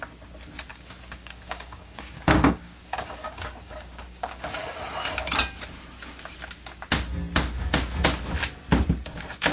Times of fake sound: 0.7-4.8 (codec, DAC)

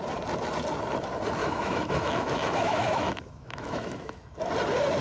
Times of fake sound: 1.4-4.4 (autoencoder, DAC-VAE)